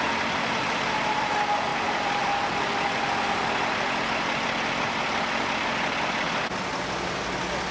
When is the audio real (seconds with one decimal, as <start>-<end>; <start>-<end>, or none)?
0.0-7.7